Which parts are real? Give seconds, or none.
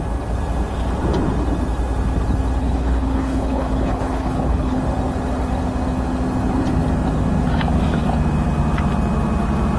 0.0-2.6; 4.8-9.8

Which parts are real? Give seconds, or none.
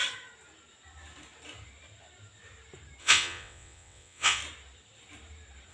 0.0-3.0; 4.4-5.7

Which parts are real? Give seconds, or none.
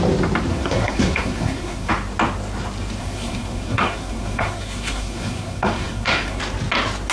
0.0-0.5; 1.9-3.0; 6.4-7.1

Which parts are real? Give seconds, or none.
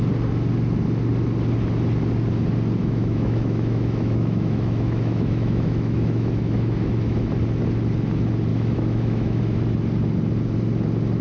0.0-2.8; 7.3-8.5; 9.4-11.2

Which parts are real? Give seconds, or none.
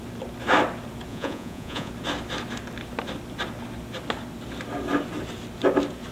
0.0-1.1; 1.9-6.1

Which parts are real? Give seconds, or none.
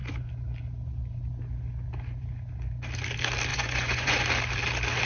0.0-3.5; 4.2-5.1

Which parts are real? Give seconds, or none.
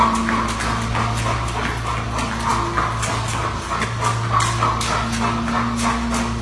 0.0-6.4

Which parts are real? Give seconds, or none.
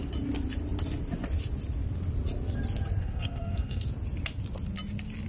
0.0-3.0; 3.8-5.3